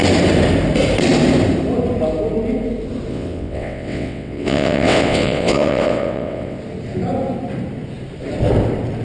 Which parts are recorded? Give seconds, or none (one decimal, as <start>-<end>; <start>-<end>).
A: 0.0-3.1; 6.6-9.0